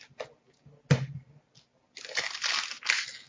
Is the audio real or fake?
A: real